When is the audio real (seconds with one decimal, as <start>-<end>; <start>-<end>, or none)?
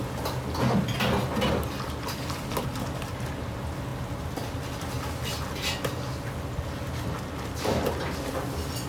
0.0-8.9